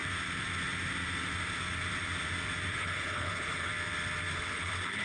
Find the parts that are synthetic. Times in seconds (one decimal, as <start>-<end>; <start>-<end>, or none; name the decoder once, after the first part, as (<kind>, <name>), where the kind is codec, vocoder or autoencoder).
2.7-3.7 (codec, HILCodec); 4.3-5.0